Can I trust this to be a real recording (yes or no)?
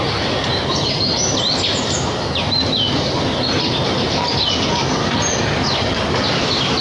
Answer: yes